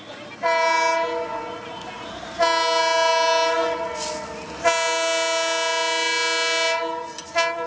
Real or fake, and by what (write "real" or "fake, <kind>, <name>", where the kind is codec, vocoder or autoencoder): real